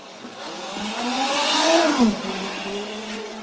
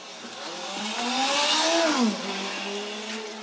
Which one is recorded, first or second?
second